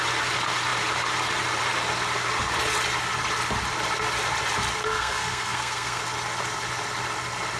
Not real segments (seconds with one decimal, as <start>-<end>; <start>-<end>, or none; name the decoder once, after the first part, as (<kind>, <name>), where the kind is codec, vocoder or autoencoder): 4.8-6.0 (codec, SNAC)